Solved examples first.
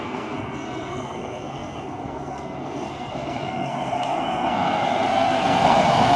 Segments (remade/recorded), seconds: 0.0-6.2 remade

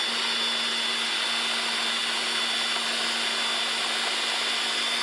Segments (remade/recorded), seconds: 0.0-5.0 recorded